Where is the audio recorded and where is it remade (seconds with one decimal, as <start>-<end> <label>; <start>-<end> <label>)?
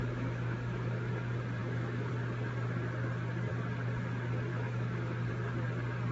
0.0-1.1 remade; 1.1-1.6 recorded; 1.6-2.1 remade; 2.1-4.5 recorded; 4.5-5.3 remade; 5.3-6.1 recorded